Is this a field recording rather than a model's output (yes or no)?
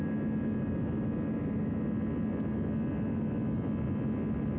yes